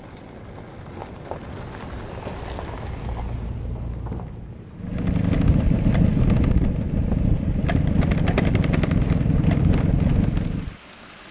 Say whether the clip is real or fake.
real